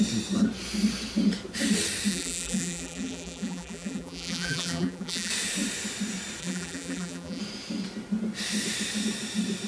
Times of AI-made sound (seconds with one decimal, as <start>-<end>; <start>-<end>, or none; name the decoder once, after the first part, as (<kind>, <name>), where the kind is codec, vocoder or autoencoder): 2.1-5.3 (vocoder, BigVGAN v2); 6.4-7.4